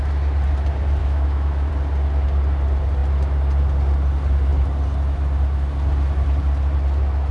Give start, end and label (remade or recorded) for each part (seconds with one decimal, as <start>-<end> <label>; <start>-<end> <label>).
0.0-1.0 recorded; 1.0-1.7 remade; 1.7-7.3 recorded

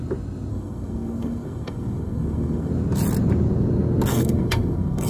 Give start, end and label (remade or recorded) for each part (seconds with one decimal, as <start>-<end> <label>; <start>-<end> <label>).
0.0-0.5 recorded; 0.5-2.7 remade; 2.7-4.1 recorded; 4.1-5.1 remade

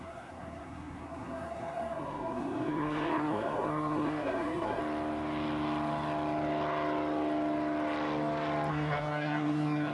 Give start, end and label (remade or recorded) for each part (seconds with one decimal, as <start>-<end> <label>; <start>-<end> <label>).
0.0-4.8 remade; 4.8-8.7 recorded; 8.7-9.9 remade

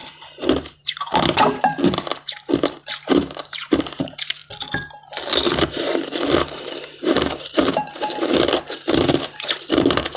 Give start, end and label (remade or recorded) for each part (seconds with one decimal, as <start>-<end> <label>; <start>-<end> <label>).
0.0-4.4 remade; 4.4-5.7 recorded; 5.7-10.2 remade

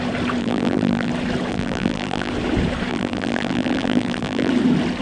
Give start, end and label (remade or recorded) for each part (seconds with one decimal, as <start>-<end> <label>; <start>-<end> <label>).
0.0-0.4 recorded; 0.4-1.1 remade; 1.1-1.5 recorded; 1.5-2.3 remade; 2.3-2.9 recorded; 2.9-4.5 remade; 4.5-5.0 recorded